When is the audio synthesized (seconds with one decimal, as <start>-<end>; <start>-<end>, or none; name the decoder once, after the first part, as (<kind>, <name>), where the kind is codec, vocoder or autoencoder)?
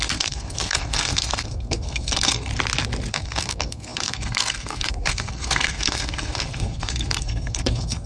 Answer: 0.0-2.5 (codec, SNAC); 3.1-8.1